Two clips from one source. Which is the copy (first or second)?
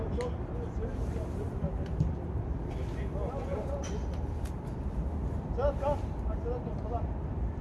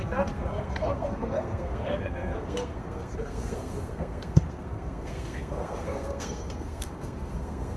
second